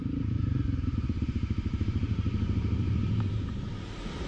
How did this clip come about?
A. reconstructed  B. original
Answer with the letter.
A